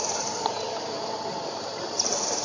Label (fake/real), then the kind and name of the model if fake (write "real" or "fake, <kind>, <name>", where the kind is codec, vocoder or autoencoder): fake, vocoder, BigVGAN v2